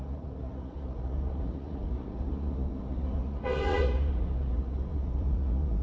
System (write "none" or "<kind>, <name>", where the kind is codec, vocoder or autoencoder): vocoder, Vocos